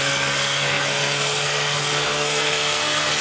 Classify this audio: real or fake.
fake